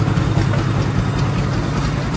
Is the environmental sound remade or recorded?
recorded